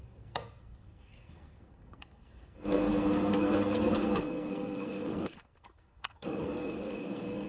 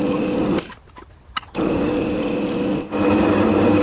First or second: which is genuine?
second